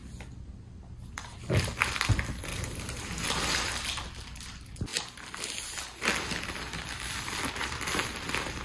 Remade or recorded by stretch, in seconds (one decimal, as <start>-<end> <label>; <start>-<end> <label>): 0.0-2.5 recorded; 2.5-3.4 remade; 3.4-8.6 recorded